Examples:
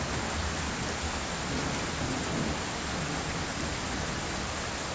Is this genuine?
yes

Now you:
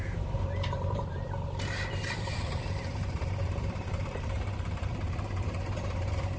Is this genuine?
no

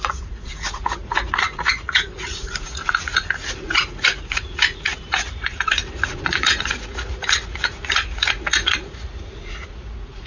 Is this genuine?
no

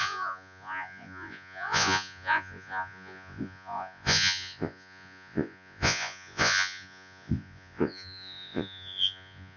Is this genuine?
no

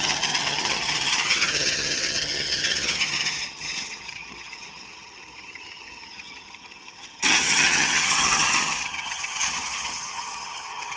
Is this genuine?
no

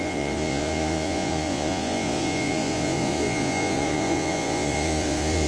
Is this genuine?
no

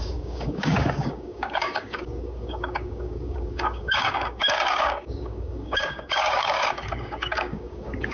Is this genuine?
no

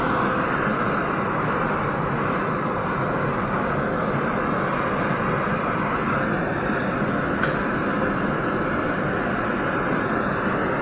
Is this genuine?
yes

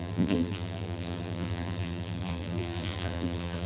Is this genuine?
no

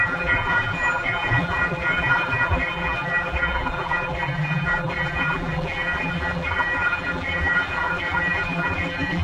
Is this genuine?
no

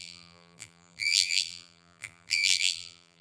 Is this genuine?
no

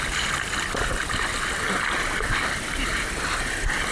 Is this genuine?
yes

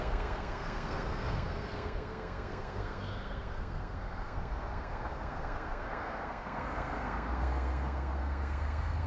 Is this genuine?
no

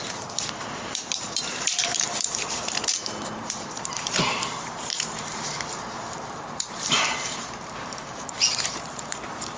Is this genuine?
no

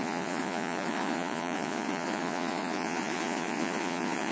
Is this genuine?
no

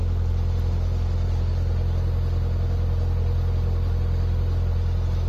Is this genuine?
yes